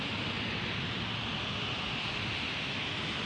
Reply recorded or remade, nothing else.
recorded